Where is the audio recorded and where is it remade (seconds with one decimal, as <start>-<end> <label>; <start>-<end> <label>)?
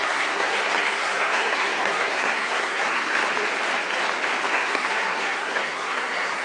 0.0-3.2 remade; 3.2-4.5 recorded; 4.5-6.4 remade